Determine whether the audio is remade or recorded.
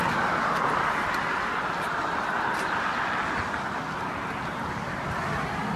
recorded